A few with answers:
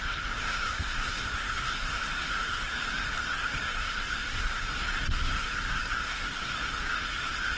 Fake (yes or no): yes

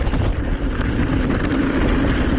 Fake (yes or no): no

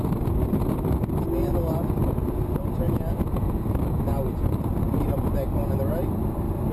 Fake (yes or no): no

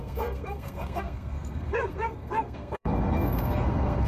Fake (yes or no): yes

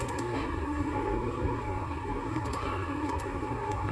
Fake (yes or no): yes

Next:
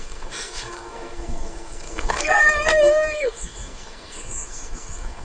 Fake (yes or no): yes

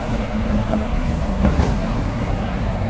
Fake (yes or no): yes